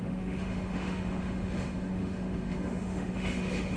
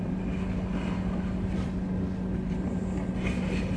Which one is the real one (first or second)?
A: second